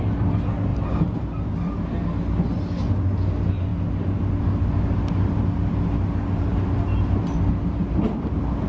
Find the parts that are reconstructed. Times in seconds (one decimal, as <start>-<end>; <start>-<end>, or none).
none